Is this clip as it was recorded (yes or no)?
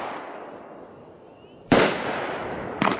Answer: no